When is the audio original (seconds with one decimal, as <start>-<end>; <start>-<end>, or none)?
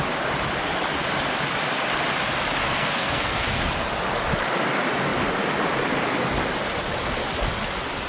0.0-2.6; 3.6-8.1